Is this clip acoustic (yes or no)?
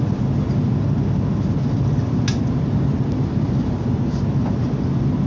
yes